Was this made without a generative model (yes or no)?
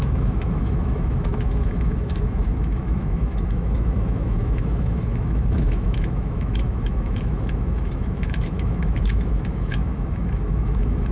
no